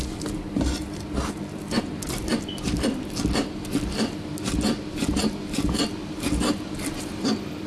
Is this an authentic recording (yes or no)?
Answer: yes